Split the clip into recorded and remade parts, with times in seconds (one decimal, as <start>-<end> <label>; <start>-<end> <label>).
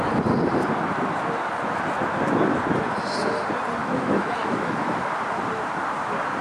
0.0-3.8 recorded; 3.8-5.1 remade; 5.1-6.4 recorded